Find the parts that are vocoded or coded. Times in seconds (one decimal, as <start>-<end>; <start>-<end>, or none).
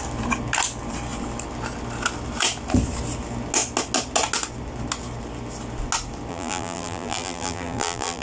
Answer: 6.3-8.2